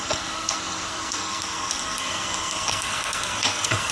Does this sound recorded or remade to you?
remade